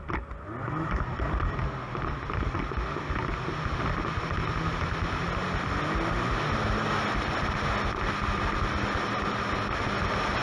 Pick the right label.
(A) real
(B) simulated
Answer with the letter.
A